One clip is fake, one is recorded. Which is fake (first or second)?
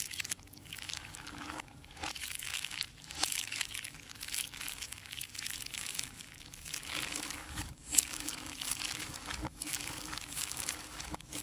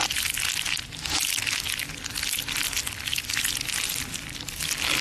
first